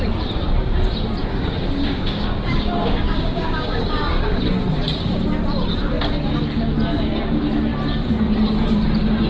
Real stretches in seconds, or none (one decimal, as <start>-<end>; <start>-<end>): 0.0-1.2; 4.4-9.3